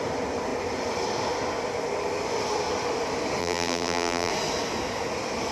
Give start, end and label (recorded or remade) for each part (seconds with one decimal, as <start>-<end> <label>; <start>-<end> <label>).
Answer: 0.0-3.4 recorded; 3.4-4.3 remade; 4.3-5.5 recorded